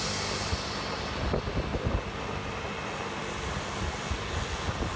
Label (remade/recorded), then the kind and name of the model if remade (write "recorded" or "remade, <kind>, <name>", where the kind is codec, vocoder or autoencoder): recorded